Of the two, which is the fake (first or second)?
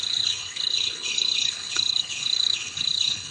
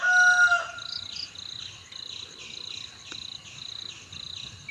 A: first